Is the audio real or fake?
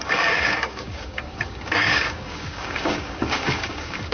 fake